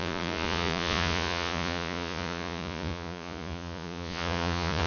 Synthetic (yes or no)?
yes